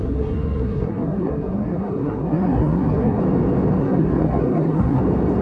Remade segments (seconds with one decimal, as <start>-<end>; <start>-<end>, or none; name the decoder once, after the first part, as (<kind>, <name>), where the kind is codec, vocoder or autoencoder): 0.0-3.2 (codec, SNAC); 3.8-5.0